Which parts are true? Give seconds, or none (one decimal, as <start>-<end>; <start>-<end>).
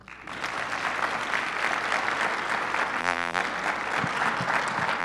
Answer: 0.0-3.0; 3.4-5.0